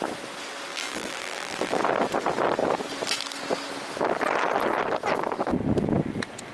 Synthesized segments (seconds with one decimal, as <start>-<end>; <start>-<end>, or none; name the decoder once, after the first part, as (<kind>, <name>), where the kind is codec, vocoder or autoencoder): 0.7-1.8 (vocoder, BigVGAN v2)